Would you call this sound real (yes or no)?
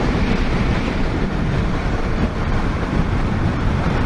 no